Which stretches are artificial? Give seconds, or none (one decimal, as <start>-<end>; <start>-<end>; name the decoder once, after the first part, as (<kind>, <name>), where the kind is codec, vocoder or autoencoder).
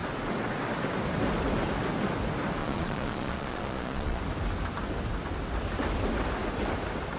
2.6-4.2 (vocoder, Vocos)